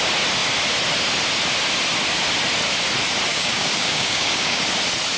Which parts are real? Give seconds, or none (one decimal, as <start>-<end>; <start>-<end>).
0.0-3.3; 4.6-5.2